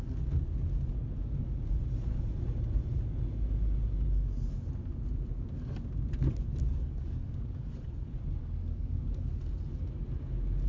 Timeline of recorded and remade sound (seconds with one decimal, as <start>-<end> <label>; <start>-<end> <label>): 0.0-6.5 recorded; 6.5-7.7 remade; 7.7-8.4 recorded; 8.4-9.4 remade; 9.4-10.7 recorded